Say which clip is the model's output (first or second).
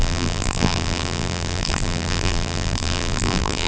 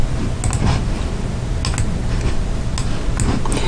first